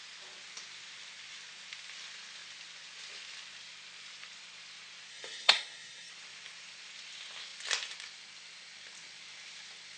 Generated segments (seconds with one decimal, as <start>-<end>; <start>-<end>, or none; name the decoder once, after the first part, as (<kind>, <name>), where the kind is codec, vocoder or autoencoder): 5.1-6.1 (codec, SNAC)